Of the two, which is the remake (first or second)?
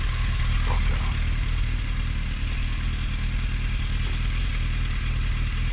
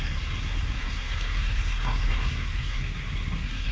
second